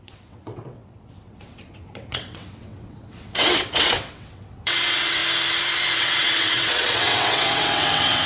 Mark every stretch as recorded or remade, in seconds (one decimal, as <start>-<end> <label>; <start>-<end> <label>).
0.0-5.2 remade; 5.2-6.0 recorded; 6.0-8.3 remade